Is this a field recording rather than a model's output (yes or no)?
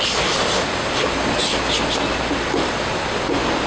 yes